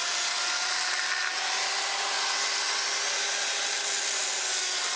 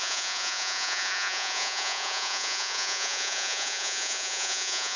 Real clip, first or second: first